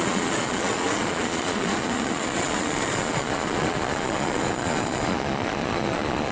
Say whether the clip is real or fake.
fake